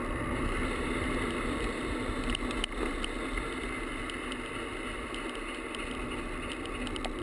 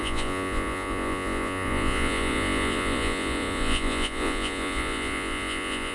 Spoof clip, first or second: second